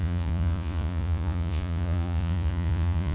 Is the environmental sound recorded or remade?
remade